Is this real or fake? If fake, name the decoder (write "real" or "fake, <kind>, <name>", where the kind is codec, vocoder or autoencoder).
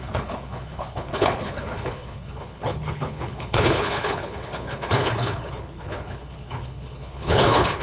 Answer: fake, codec, HILCodec